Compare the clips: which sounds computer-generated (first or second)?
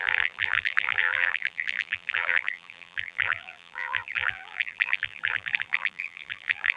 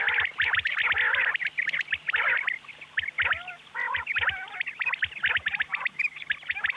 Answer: first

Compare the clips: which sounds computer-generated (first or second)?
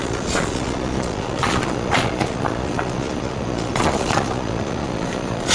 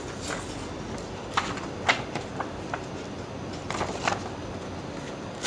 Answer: first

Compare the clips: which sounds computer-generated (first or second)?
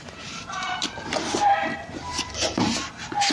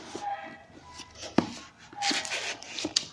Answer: first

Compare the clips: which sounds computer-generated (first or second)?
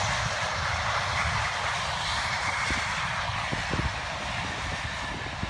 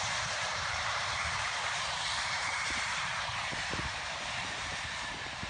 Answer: second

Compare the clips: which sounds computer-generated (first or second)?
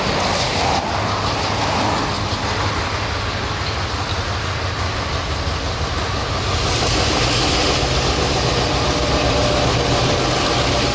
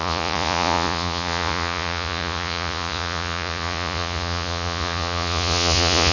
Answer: second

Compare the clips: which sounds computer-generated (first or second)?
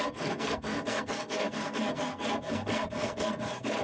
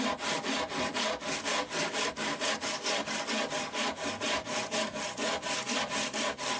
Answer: first